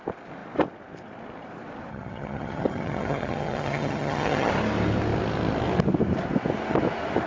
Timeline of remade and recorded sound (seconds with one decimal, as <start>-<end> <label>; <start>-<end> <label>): 0.0-1.9 recorded; 1.9-4.5 remade; 4.5-7.3 recorded